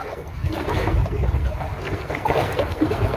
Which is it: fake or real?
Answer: fake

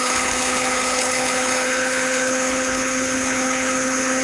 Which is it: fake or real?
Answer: fake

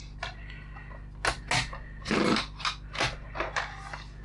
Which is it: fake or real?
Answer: real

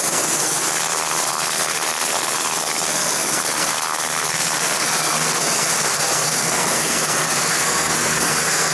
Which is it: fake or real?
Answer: fake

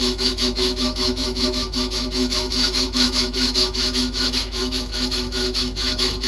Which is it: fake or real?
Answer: fake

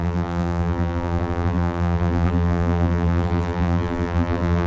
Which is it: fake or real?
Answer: fake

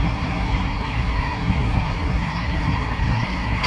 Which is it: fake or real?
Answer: fake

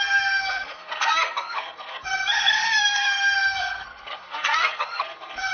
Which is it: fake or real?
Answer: fake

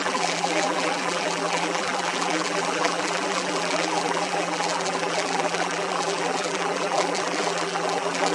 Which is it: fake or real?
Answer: fake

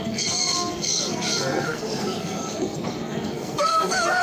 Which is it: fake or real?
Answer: fake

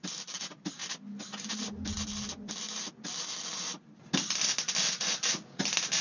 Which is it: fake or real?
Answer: real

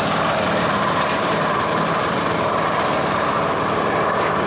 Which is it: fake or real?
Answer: fake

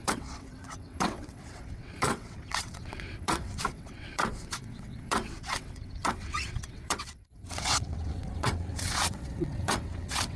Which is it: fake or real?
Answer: fake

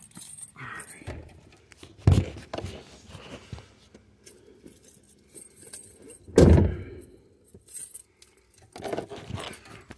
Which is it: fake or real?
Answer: real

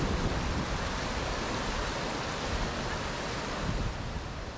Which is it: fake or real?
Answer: real